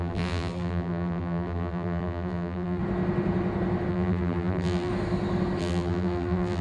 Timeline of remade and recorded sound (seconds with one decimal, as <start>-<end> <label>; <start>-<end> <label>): 0.0-2.8 remade; 2.8-3.9 recorded; 3.9-4.9 remade; 4.9-5.6 recorded; 5.6-6.6 remade